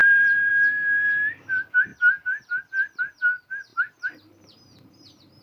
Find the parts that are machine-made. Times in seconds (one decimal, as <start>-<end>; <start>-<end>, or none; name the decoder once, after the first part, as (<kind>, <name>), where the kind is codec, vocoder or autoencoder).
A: 0.0-0.5 (vocoder, BigVGAN v2); 3.7-5.4